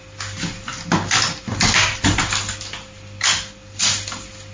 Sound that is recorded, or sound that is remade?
recorded